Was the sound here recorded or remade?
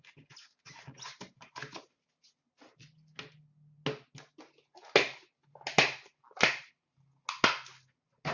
recorded